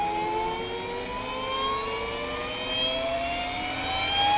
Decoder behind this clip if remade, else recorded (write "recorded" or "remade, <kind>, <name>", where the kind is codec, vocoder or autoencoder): recorded